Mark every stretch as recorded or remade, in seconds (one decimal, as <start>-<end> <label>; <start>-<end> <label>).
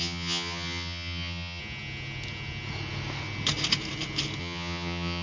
0.0-1.6 remade; 1.6-4.4 recorded; 4.4-5.2 remade